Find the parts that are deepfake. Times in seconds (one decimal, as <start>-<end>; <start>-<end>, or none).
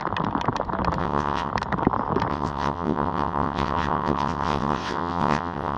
1.0-1.5; 2.3-5.8